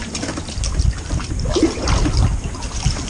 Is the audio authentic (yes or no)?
yes